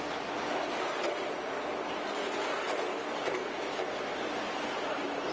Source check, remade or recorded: recorded